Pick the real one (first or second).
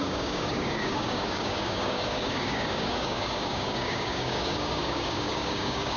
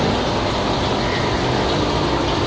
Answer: second